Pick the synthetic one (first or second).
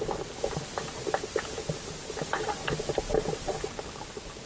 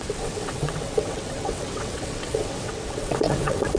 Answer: second